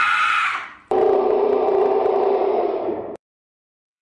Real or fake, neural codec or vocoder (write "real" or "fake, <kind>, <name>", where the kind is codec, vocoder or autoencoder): fake, vocoder, BigVGAN v2